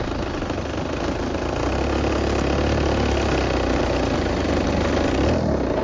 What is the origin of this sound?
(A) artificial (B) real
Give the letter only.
B